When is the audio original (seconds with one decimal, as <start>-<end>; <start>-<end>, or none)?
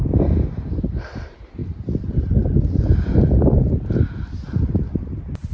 0.0-5.5